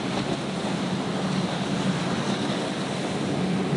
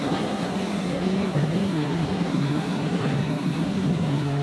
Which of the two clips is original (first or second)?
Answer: first